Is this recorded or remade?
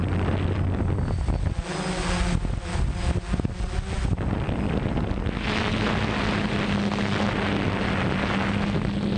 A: recorded